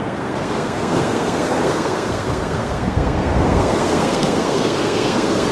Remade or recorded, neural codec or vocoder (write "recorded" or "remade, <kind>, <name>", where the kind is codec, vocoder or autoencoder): remade, codec, SNAC